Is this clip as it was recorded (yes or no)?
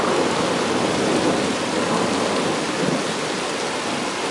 yes